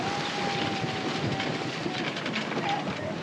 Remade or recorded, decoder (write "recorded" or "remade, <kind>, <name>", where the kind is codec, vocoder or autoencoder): recorded